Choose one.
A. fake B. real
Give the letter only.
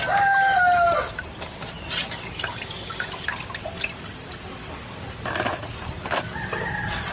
B